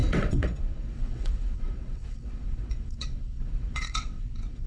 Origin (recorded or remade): remade